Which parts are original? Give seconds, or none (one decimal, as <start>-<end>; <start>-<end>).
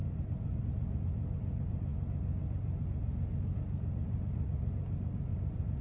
0.0-5.8